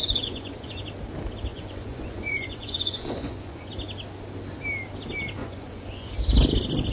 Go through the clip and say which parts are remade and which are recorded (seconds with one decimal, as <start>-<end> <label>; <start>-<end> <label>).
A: 0.0-0.8 remade; 0.8-1.5 recorded; 1.5-3.7 remade; 3.7-5.4 recorded; 5.4-6.1 remade; 6.1-6.9 recorded